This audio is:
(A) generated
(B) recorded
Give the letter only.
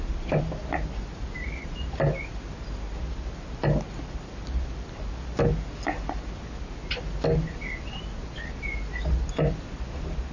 B